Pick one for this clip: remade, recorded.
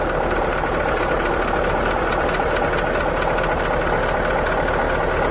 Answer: recorded